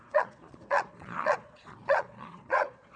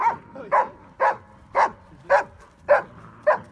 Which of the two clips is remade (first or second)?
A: first